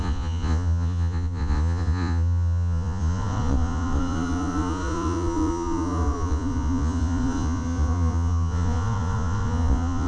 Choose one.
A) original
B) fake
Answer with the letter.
B